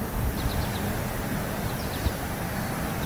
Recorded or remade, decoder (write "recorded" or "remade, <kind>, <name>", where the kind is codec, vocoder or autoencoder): recorded